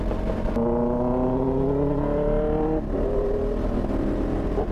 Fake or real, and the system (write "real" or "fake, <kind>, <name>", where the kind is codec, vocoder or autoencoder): real